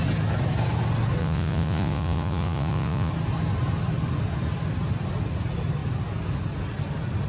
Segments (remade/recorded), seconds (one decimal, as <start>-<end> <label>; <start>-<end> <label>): 0.0-1.2 recorded; 1.2-3.1 remade; 3.1-7.3 recorded